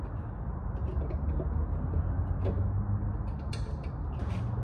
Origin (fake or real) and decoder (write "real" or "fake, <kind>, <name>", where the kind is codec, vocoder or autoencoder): real